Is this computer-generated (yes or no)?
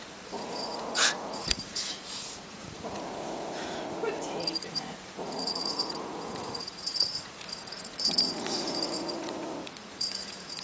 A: yes